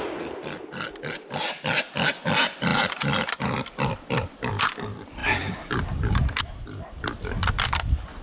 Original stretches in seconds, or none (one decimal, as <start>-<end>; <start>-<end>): 0.0-2.7; 4.5-8.2